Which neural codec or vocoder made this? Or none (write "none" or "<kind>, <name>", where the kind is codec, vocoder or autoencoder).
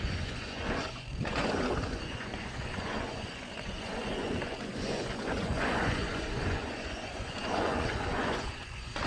vocoder, Vocos